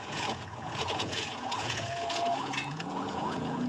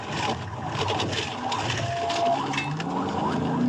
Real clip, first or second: second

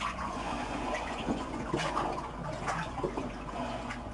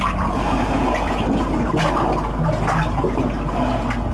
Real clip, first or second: second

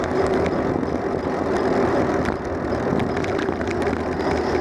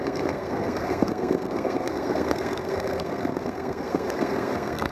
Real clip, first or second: first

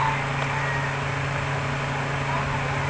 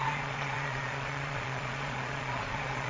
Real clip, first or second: first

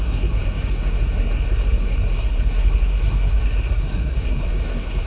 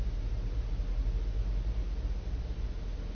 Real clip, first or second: second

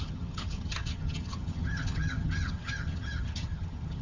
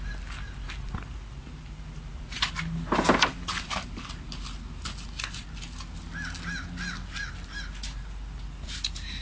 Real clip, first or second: second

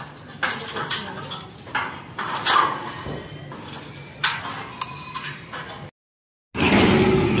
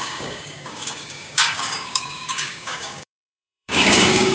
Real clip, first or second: first